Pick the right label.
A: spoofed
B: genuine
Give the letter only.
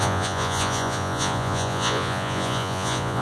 A